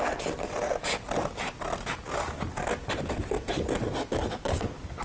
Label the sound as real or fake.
real